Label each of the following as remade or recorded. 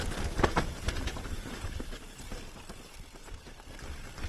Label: recorded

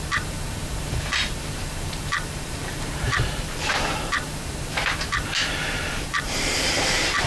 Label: remade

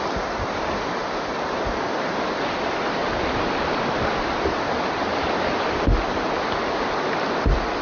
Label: recorded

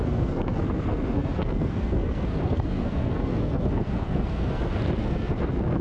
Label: remade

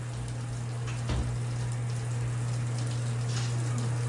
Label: recorded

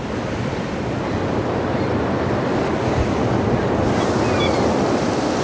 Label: recorded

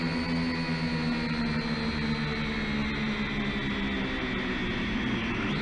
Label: recorded